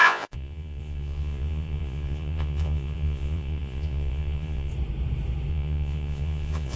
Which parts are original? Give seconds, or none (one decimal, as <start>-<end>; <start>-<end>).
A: 4.7-5.5